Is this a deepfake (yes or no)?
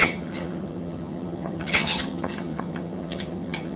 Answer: yes